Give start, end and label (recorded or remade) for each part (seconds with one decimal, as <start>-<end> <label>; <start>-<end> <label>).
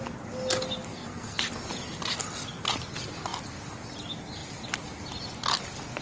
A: 0.0-0.9 recorded; 0.9-1.4 remade; 1.4-6.0 recorded